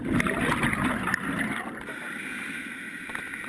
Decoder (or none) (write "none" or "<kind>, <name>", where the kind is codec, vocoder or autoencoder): none